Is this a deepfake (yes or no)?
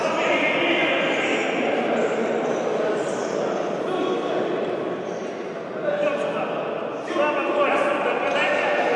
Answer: no